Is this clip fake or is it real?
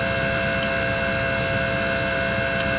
real